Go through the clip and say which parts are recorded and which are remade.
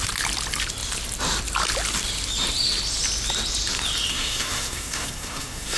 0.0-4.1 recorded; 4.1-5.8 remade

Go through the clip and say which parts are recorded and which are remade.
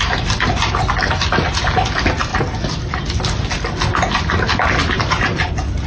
0.0-5.9 recorded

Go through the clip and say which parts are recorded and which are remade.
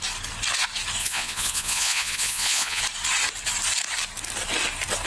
0.0-1.0 recorded; 1.0-2.8 remade; 2.8-5.1 recorded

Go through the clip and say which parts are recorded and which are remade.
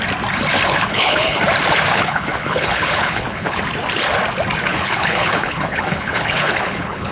0.0-0.7 recorded; 0.7-1.4 remade; 1.4-1.9 recorded; 1.9-3.6 remade; 3.6-4.7 recorded; 4.7-7.1 remade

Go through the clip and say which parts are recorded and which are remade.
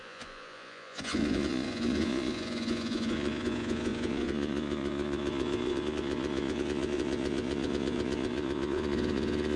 0.0-9.6 remade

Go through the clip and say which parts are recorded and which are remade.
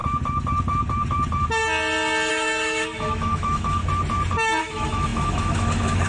0.0-2.3 recorded; 2.3-3.8 remade; 3.8-4.6 recorded; 4.6-6.1 remade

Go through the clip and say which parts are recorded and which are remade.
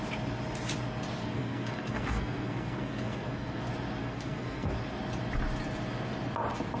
0.0-1.2 recorded; 1.2-3.6 remade; 3.6-4.0 recorded; 4.0-4.7 remade; 4.7-6.8 recorded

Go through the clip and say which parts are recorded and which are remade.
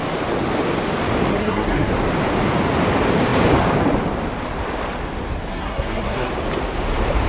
0.0-1.3 recorded; 1.3-1.9 remade; 1.9-5.5 recorded; 5.5-6.3 remade; 6.3-7.3 recorded